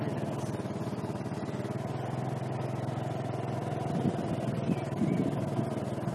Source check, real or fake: real